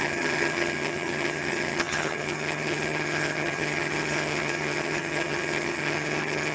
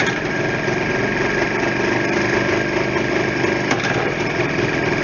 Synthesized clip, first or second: first